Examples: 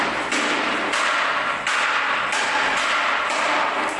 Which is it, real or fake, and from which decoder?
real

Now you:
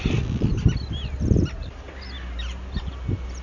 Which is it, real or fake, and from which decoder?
real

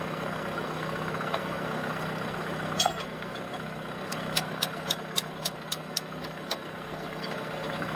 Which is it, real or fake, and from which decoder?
fake, codec, SNAC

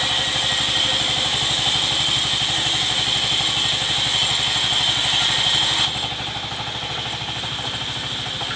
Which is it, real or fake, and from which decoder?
real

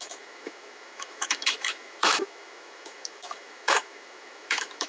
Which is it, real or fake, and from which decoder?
fake, autoencoder, DAC-VAE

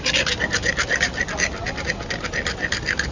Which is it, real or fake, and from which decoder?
real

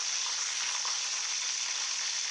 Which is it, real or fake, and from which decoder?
real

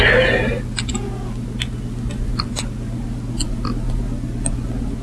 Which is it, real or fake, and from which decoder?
real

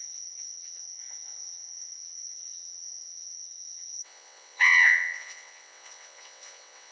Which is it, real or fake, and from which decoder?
fake, vocoder, WaveNeXt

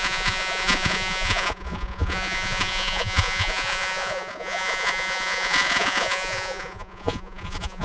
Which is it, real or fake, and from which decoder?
fake, vocoder, Vocos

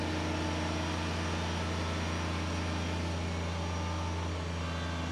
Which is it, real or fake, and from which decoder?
real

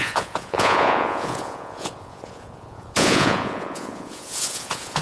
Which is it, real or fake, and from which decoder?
fake, vocoder, Vocos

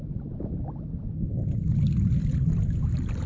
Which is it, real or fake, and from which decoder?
real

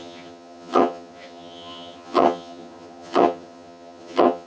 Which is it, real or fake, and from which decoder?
fake, vocoder, HiFi-GAN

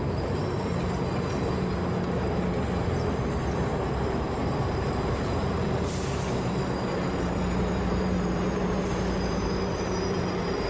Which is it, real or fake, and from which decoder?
fake, vocoder, BigVGAN v2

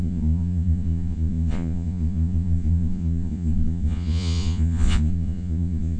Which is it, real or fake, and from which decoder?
fake, vocoder, Vocos